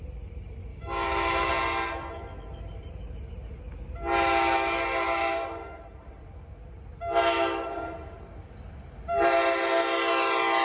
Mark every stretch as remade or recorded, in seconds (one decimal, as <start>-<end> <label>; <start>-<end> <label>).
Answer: 0.0-0.7 recorded; 0.7-1.5 remade; 1.5-10.6 recorded